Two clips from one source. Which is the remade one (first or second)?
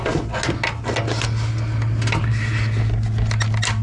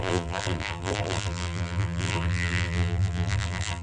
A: second